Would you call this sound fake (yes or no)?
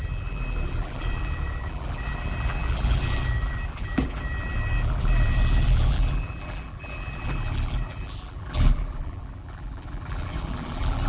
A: yes